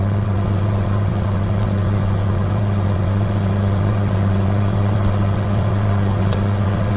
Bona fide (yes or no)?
no